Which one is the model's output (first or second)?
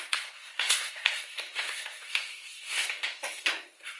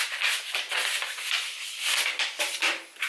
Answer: first